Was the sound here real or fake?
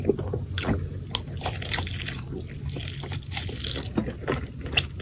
real